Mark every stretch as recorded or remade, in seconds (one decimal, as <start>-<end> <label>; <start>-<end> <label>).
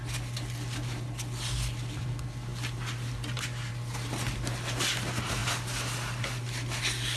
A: 0.0-7.2 recorded